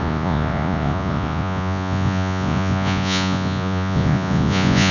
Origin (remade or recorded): remade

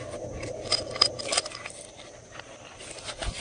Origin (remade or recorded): recorded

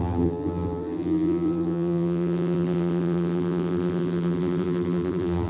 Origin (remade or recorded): remade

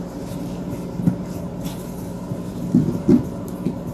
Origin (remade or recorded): recorded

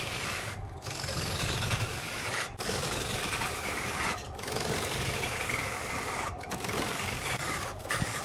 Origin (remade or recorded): remade